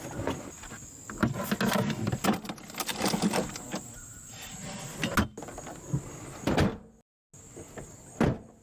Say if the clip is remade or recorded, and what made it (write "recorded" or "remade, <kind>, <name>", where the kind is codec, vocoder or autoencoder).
recorded